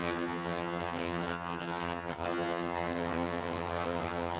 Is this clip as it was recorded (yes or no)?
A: no